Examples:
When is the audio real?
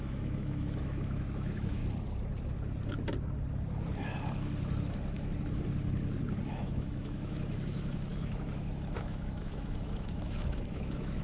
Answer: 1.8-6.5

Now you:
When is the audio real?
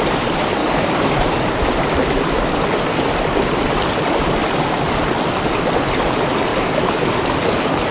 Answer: 0.0-0.6; 1.2-4.4; 5.0-6.5; 7.2-7.9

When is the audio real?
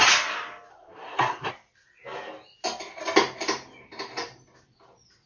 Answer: 0.0-0.7; 1.5-5.3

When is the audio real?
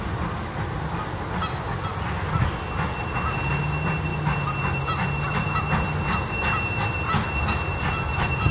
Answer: 0.0-8.5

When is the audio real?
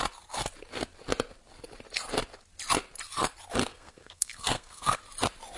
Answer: 0.0-3.7; 5.0-5.6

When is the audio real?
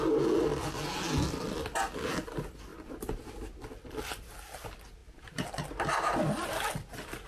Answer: 0.0-7.3